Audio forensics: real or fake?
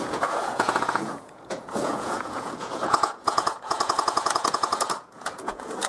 fake